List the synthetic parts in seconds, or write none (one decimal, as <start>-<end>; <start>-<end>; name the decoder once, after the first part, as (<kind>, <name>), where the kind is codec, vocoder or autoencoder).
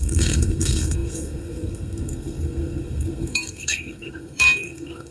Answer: 0.0-5.1 (codec, SNAC)